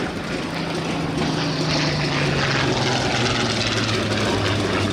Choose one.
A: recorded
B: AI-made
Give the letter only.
A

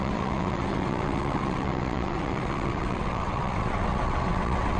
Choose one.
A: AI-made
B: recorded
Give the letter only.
A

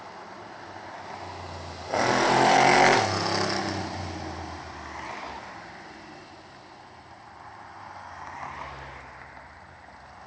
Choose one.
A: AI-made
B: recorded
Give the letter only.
B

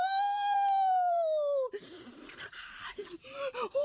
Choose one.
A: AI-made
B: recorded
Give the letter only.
A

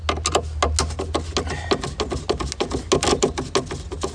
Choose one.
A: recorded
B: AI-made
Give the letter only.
A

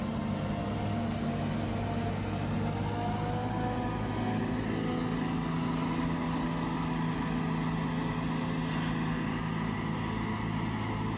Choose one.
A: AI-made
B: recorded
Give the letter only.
B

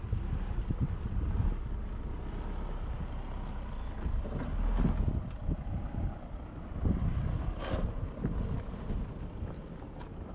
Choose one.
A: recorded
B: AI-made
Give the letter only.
A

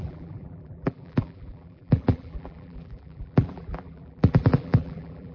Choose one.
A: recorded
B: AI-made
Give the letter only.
B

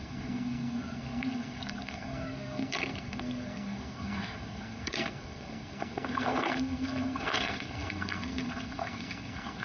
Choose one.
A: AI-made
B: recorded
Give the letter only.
A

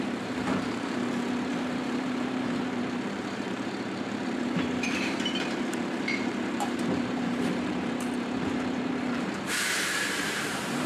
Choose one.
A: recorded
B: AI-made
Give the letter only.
B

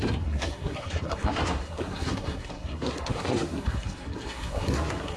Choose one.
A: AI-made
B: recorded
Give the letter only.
A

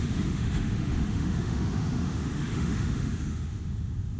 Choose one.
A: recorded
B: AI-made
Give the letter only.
B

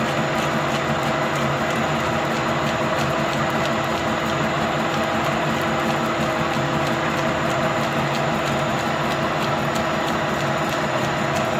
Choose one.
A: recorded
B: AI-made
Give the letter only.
A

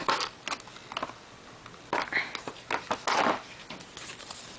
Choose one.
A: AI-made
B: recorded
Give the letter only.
B